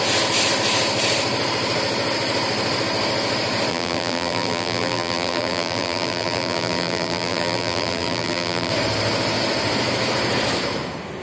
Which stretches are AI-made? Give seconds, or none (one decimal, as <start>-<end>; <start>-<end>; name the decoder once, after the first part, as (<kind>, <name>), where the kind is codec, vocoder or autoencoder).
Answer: 3.7-8.7 (vocoder, BigVGAN v2)